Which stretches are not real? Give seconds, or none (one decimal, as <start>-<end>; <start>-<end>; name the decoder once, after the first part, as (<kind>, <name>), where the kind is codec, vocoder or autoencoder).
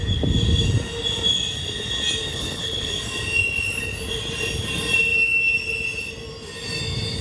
2.3-2.9 (codec, HILCodec)